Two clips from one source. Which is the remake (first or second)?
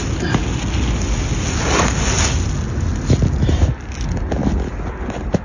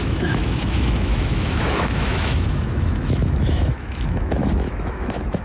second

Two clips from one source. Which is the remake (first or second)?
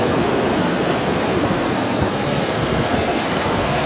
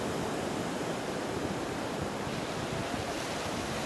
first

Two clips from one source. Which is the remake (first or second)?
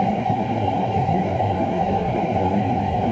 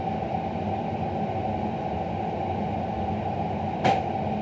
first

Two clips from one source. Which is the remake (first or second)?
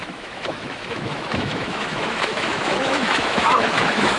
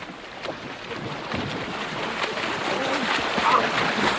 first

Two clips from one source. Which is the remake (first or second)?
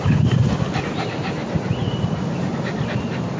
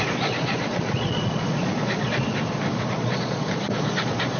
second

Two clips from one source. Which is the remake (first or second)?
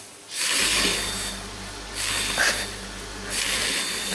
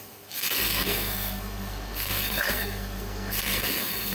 second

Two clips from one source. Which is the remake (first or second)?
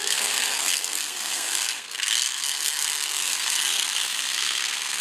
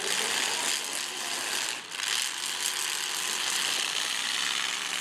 first